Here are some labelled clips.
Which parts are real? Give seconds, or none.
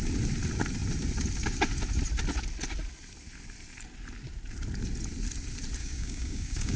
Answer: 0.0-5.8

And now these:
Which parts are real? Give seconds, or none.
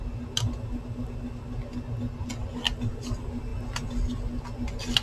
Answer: 0.0-5.0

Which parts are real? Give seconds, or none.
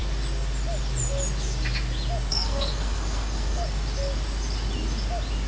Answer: 0.0-2.3; 3.6-5.5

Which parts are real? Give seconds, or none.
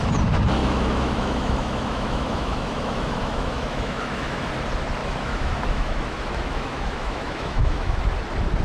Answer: 0.0-0.6; 4.5-5.0; 8.0-8.6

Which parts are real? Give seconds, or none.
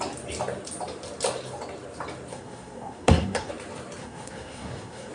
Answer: 0.0-2.3; 3.5-4.0